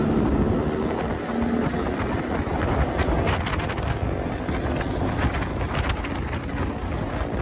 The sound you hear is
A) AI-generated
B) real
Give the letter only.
B